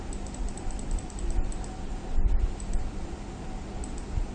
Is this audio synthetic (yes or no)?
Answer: no